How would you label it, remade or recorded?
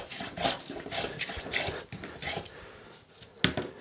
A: recorded